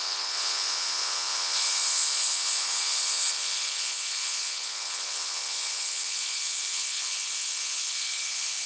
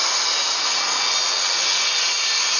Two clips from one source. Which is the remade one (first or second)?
first